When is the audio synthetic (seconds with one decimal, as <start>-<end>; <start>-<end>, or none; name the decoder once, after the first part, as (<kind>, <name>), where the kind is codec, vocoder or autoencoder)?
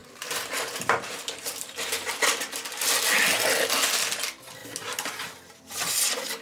0.0-2.3 (vocoder, BigVGAN v2)